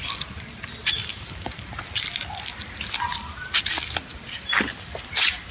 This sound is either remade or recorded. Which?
recorded